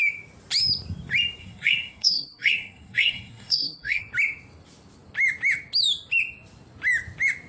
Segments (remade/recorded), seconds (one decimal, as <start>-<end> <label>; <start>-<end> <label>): 0.0-1.4 recorded; 1.4-4.0 remade; 4.0-7.5 recorded